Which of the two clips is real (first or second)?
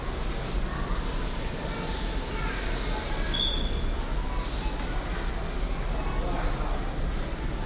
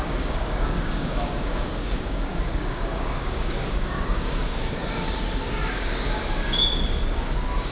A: first